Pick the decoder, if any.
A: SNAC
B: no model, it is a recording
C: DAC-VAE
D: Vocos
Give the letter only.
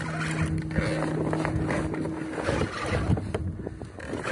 B